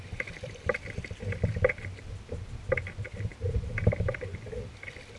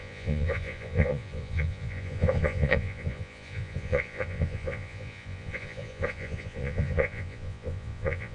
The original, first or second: first